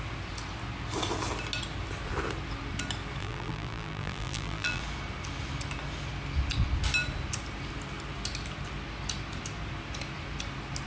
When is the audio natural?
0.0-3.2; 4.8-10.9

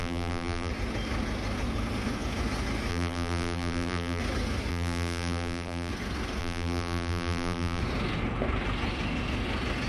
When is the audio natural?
0.7-2.9; 4.2-4.7; 5.9-6.4; 7.8-9.9

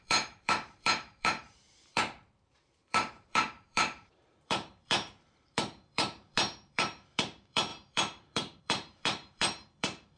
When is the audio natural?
none